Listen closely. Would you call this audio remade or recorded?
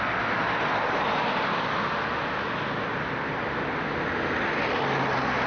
recorded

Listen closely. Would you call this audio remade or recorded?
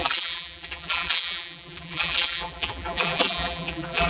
remade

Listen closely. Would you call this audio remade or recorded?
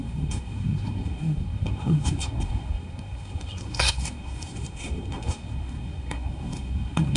remade